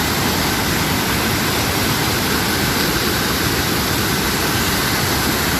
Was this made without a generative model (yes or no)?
yes